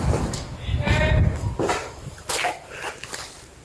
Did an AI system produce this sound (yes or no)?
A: no